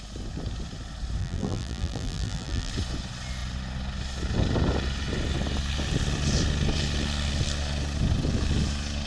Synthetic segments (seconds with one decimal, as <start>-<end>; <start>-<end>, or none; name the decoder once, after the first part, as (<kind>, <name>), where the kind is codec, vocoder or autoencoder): 1.2-2.7 (vocoder, BigVGAN v2)